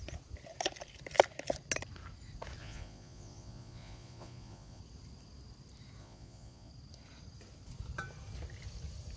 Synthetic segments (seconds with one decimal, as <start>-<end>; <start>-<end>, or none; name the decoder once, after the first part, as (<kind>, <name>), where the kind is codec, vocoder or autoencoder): 2.6-4.8 (vocoder, Vocos); 6.0-6.7